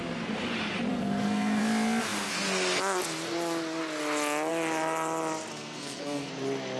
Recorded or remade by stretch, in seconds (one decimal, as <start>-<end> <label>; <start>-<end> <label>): 0.0-0.9 recorded; 0.9-1.6 remade; 1.6-5.5 recorded; 5.5-6.3 remade; 6.3-6.8 recorded

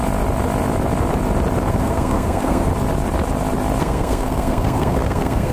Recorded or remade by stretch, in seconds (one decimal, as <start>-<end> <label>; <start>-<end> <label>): 0.0-1.7 recorded; 1.7-2.7 remade; 2.7-3.8 recorded; 3.8-5.5 remade

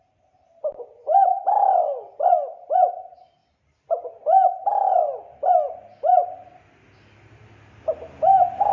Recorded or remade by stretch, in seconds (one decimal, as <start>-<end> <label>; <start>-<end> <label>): 0.0-8.7 recorded

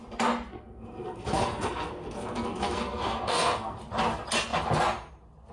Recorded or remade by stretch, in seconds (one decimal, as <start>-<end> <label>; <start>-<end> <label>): 0.0-0.5 recorded; 0.5-3.8 remade; 3.8-5.5 recorded

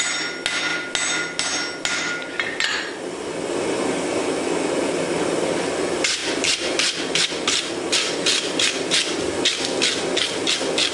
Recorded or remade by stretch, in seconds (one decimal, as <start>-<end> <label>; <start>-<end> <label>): 0.0-10.9 recorded

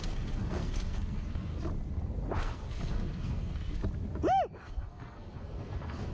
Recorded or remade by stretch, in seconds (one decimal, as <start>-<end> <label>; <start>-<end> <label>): 0.0-1.5 remade; 1.5-2.4 recorded; 2.4-3.8 remade; 3.8-4.6 recorded; 4.6-6.1 remade

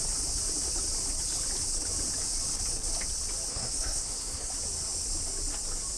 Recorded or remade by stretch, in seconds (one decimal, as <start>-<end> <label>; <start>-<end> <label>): 0.0-3.5 recorded; 3.5-4.5 remade; 4.5-6.0 recorded